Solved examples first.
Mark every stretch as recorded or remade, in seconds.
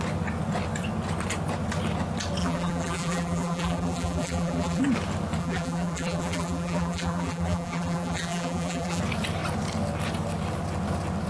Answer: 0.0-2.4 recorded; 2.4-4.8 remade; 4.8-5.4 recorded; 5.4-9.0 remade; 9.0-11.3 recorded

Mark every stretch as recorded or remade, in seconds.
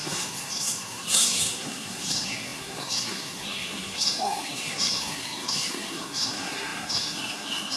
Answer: 0.0-7.8 remade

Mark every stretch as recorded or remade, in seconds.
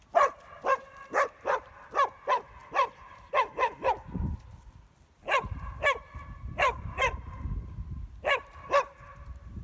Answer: 0.0-9.6 recorded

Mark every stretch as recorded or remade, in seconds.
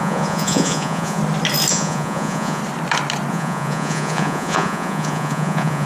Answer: 0.0-1.2 remade; 1.2-1.7 recorded; 1.7-2.6 remade; 2.6-3.3 recorded; 3.3-5.9 remade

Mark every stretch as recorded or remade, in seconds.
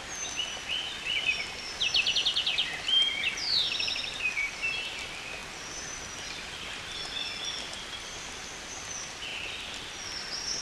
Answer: 0.0-1.8 remade; 1.8-3.3 recorded; 3.3-5.4 remade; 5.4-8.6 recorded; 8.6-10.6 remade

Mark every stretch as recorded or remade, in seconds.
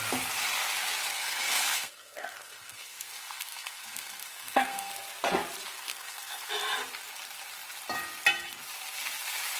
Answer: 0.0-1.1 recorded; 1.1-4.9 remade; 4.9-5.7 recorded; 5.7-6.5 remade; 6.5-9.6 recorded